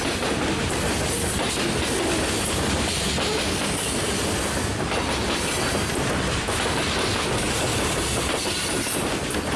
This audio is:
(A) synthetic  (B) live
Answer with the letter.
B